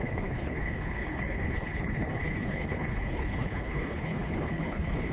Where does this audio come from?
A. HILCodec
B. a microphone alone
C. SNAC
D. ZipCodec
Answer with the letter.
A